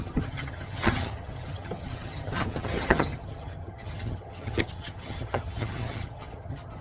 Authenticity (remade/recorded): remade